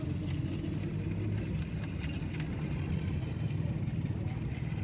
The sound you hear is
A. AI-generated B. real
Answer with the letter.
B